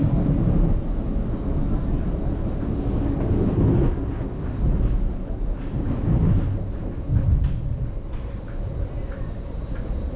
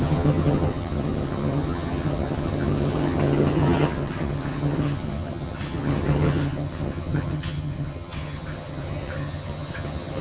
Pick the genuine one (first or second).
first